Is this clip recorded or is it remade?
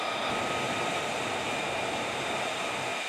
recorded